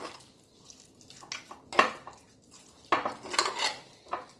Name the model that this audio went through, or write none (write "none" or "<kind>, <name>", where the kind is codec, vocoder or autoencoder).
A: none